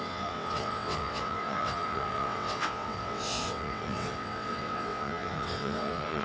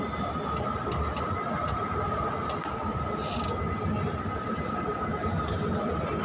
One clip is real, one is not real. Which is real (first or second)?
second